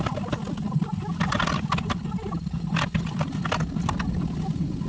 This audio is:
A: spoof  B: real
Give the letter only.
B